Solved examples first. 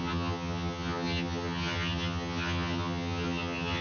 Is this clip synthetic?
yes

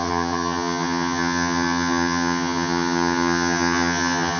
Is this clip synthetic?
yes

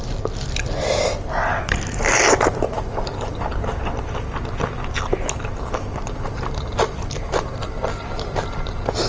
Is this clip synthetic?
no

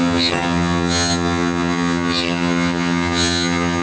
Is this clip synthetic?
yes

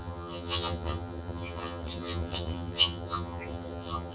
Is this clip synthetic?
yes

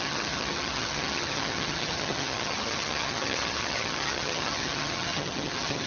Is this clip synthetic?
yes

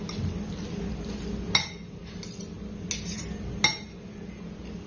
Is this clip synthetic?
no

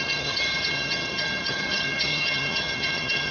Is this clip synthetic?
yes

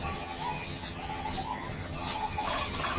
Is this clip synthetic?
yes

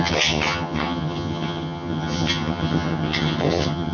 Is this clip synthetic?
yes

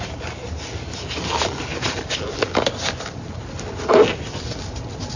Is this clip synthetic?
no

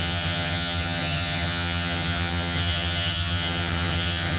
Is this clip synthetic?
yes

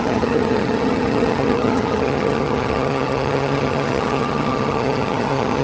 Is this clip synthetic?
yes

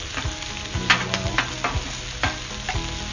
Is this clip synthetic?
no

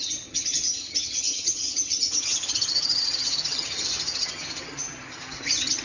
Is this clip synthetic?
yes